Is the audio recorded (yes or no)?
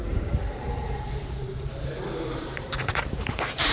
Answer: no